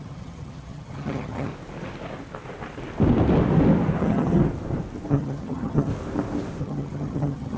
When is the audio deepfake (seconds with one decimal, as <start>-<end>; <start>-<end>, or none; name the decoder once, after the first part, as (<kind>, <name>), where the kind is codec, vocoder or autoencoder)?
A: 0.0-1.5 (vocoder, HiFi-GAN); 4.0-4.4; 5.1-5.9; 6.6-7.6